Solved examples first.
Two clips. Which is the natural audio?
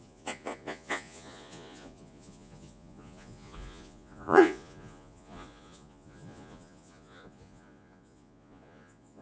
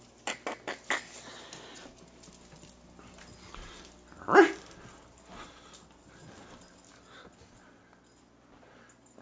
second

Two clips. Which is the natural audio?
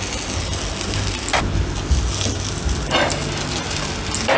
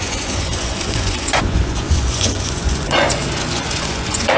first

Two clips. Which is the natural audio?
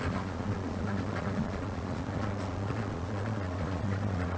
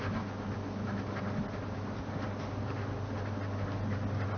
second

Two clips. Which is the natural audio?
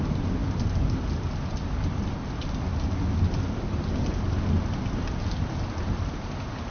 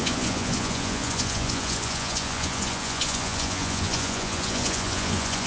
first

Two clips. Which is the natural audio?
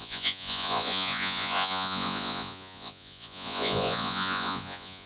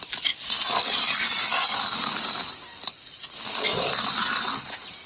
second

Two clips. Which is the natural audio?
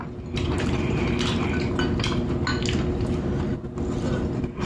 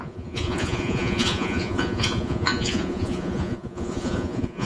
first